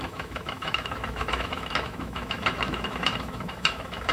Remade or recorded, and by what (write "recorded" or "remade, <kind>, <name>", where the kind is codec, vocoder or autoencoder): remade, autoencoder, DAC-VAE